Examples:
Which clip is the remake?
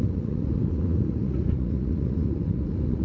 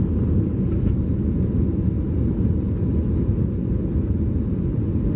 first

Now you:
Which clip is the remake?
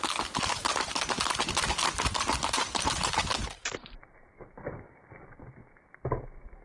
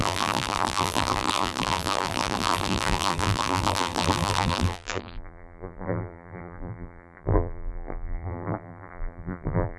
second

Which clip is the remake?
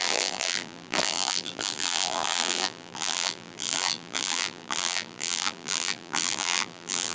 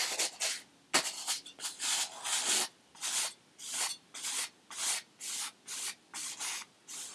first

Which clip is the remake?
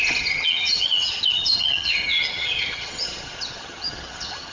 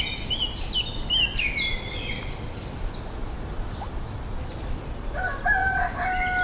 first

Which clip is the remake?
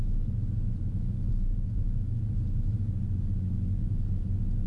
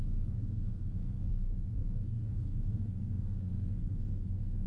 second